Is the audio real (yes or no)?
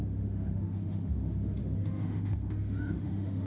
no